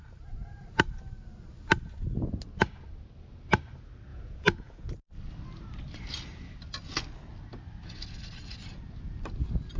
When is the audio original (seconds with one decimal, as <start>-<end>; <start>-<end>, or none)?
0.0-4.1; 4.9-9.8